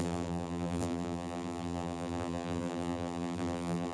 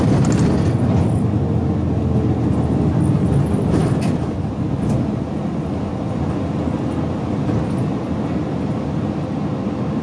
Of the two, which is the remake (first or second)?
first